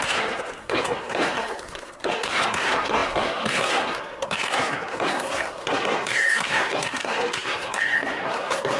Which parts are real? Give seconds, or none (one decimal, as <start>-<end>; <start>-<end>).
none